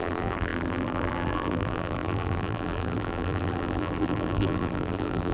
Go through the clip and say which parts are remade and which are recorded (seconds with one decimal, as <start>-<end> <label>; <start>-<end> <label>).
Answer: 0.0-5.3 remade